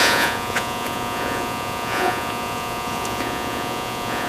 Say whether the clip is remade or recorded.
remade